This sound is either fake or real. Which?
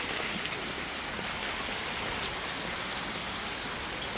real